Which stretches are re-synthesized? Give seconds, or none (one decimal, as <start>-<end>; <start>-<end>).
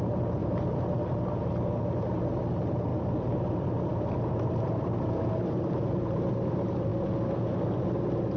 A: none